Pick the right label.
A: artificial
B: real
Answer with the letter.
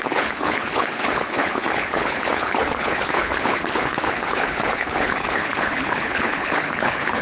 A